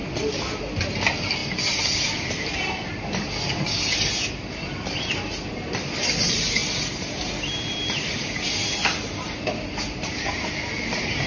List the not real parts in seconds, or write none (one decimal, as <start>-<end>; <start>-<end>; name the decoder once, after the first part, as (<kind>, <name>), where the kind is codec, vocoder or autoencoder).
1.4-2.9 (vocoder, BigVGAN v2)